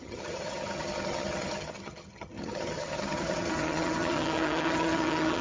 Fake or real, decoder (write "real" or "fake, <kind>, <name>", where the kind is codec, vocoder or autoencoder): fake, vocoder, HiFi-GAN